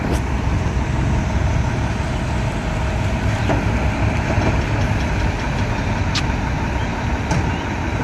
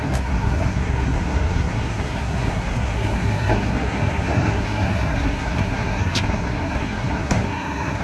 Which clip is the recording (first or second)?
first